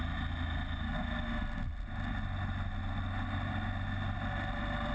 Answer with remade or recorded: recorded